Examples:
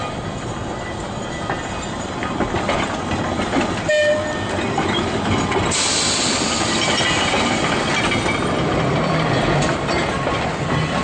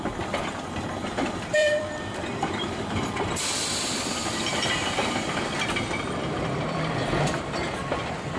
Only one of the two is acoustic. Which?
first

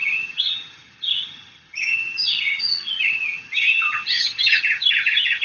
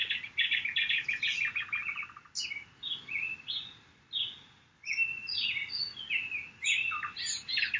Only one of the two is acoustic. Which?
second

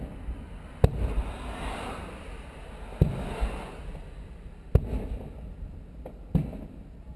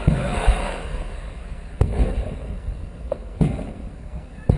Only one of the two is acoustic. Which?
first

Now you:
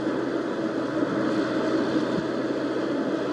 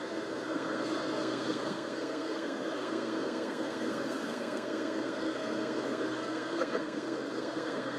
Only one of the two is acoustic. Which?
first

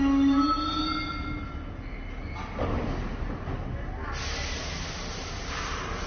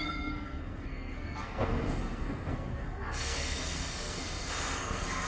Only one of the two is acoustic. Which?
first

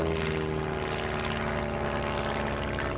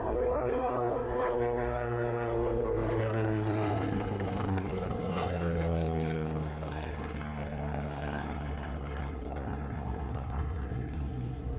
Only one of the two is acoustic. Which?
first